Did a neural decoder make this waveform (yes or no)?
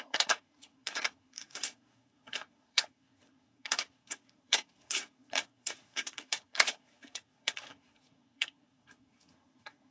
yes